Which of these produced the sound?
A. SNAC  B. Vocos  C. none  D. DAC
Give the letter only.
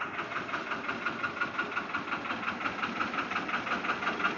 C